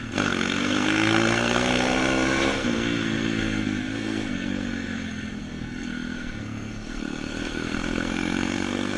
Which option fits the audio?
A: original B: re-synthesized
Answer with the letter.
B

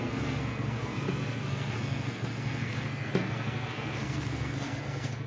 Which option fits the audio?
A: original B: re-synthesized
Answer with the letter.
B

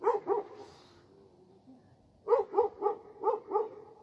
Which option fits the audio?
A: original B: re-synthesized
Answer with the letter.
A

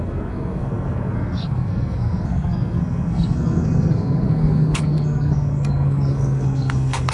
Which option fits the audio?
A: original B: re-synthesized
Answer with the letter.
B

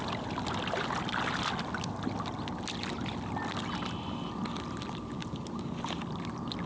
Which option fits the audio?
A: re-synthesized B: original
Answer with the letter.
B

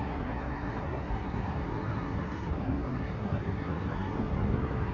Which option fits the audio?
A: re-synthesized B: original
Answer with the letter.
A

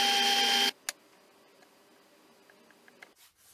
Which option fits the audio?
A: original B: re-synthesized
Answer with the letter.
A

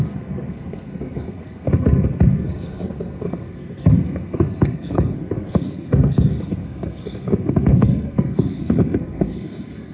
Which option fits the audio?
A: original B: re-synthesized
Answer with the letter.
B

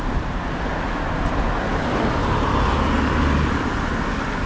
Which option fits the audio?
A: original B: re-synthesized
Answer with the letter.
A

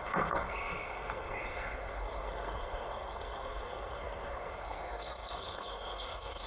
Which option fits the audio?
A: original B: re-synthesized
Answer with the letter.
B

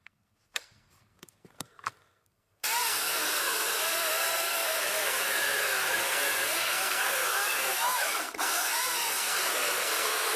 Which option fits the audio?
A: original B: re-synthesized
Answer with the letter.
B